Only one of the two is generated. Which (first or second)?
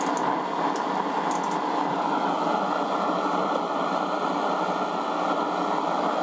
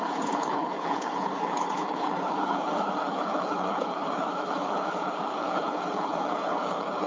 second